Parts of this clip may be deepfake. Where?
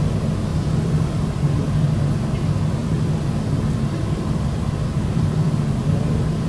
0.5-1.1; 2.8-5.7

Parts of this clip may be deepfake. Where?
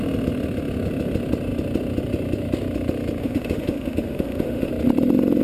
3.2-4.7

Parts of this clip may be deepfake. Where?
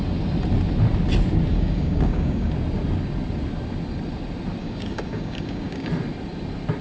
1.5-2.5; 4.6-5.9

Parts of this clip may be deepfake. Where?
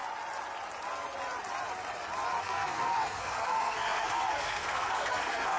2.4-5.6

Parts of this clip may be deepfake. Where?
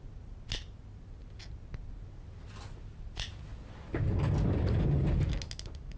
none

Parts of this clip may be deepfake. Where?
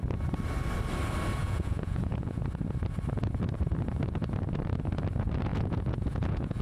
1.4-2.4; 5.5-6.6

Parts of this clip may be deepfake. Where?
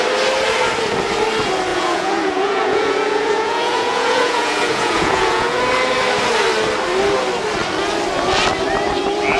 1.7-5.6